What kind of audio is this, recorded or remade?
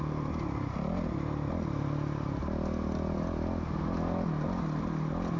recorded